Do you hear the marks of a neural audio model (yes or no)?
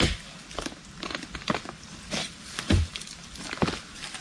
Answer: yes